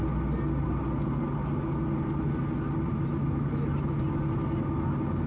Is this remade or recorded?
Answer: recorded